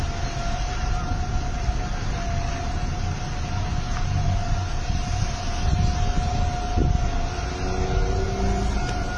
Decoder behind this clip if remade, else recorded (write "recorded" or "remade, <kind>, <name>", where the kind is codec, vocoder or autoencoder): recorded